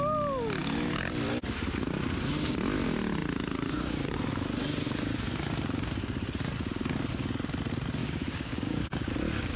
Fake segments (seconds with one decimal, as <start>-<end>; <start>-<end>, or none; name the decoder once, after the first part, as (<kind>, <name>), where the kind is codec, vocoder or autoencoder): 8.0-9.1 (codec, DAC)

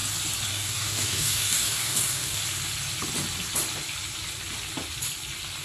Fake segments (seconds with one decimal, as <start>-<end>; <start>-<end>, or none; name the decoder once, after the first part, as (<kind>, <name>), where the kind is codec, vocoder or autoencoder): 0.5-2.4 (codec, DAC)

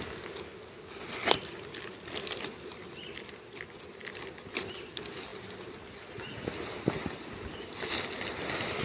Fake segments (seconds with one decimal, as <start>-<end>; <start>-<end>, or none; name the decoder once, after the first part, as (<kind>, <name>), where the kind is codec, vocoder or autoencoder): none

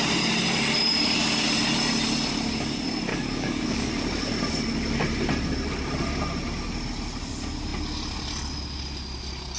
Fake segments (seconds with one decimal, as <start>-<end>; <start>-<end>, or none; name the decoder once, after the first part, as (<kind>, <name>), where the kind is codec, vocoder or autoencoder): 3.1-3.9 (codec, DAC)

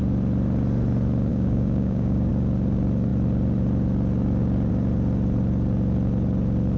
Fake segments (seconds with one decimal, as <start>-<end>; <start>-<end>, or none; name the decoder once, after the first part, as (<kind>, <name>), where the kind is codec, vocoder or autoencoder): 1.3-2.3 (codec, DAC)

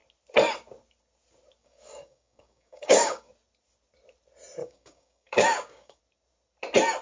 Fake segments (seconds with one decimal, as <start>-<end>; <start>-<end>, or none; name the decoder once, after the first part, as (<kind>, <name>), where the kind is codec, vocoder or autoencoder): 1.6-3.3 (codec, DAC); 4.6-6.0

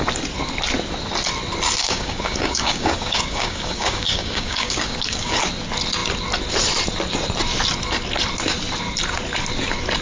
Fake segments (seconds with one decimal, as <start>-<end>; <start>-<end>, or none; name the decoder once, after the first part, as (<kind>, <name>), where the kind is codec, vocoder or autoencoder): 1.8-5.4 (codec, DAC)

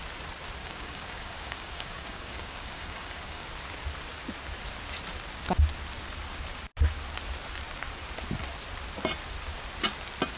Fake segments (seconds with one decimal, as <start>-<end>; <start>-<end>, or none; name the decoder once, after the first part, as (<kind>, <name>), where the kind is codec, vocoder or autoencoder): 0.6-3.5 (codec, DAC)